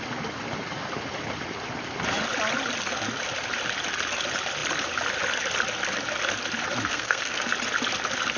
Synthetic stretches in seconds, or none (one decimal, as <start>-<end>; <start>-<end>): 6.9-7.5